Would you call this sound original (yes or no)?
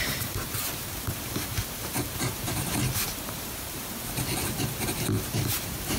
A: no